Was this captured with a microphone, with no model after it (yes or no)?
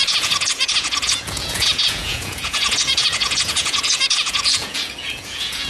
no